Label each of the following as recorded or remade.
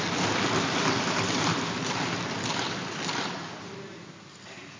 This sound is recorded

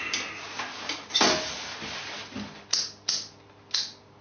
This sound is recorded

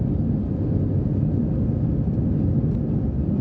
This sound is recorded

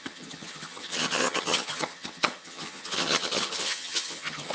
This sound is remade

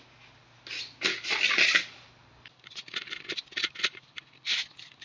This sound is recorded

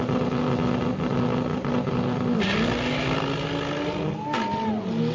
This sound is recorded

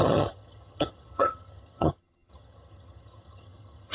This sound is remade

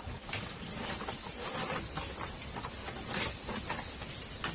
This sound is recorded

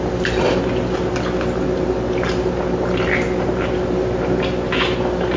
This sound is recorded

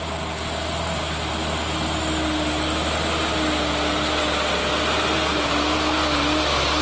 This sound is recorded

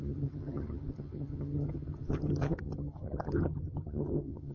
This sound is remade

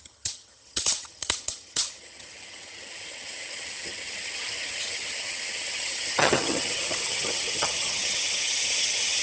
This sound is remade